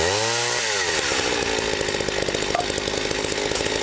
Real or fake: real